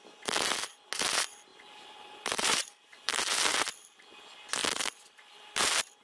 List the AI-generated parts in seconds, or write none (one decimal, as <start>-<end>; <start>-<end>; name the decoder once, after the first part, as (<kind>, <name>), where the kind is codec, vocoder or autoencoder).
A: 1.5-3.2 (vocoder, BigVGAN v2); 4.6-6.0